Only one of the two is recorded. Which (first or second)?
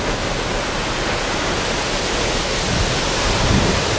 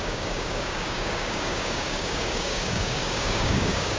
first